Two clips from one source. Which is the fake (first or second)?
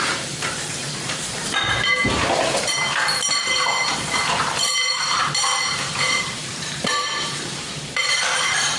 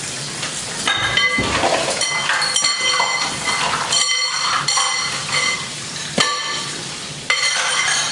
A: first